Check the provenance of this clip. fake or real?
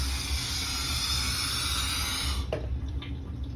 real